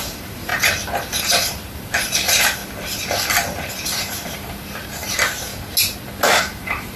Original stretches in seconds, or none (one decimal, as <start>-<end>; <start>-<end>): 0.5-1.2; 2.6-3.7; 5.5-6.4